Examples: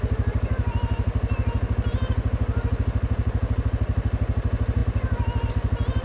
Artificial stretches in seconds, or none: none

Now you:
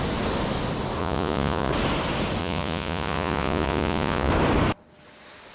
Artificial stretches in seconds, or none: 1.0-1.7 (vocoder, Vocos); 2.4-4.3